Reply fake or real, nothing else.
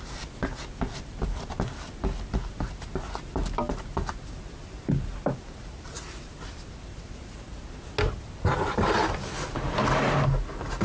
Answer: real